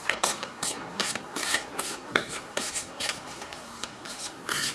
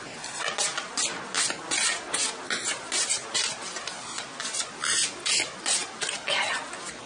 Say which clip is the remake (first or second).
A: first